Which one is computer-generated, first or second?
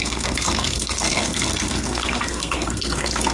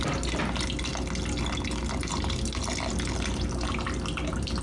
first